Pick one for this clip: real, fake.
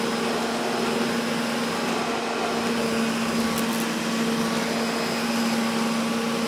real